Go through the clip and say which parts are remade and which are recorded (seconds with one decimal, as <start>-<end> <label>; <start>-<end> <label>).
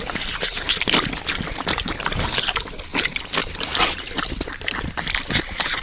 0.0-5.8 recorded